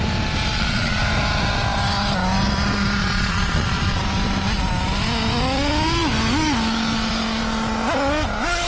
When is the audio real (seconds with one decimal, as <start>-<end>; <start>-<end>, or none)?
0.0-0.5; 1.0-3.0; 4.0-8.7